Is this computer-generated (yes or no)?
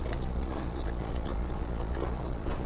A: yes